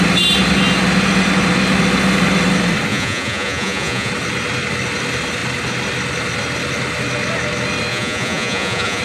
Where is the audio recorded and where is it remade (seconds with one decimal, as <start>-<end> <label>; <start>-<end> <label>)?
0.0-2.9 recorded; 2.9-4.1 remade; 4.1-7.9 recorded; 7.9-9.0 remade